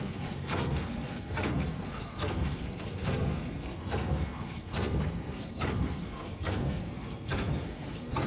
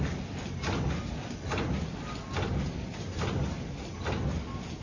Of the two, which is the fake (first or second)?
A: first